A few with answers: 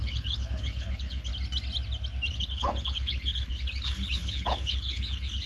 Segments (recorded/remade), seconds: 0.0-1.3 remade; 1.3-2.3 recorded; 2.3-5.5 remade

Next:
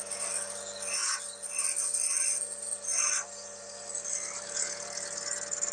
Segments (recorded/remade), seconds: 0.0-5.7 recorded

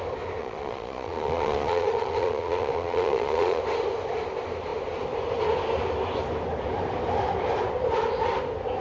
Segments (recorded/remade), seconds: 0.0-0.4 recorded; 0.4-3.6 remade; 3.6-8.8 recorded

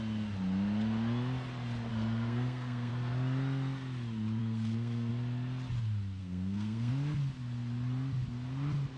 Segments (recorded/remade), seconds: 0.0-1.9 recorded; 1.9-2.9 remade; 2.9-4.4 recorded; 4.4-5.1 remade; 5.1-6.2 recorded; 6.2-6.9 remade; 6.9-9.0 recorded

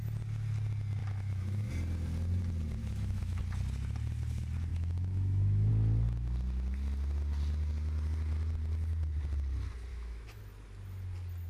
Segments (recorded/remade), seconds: 0.0-1.0 recorded; 1.0-1.7 remade; 1.7-2.8 recorded; 2.8-3.4 remade; 3.4-4.7 recorded; 4.7-5.7 remade; 5.7-9.9 recorded; 9.9-10.4 remade; 10.4-11.5 recorded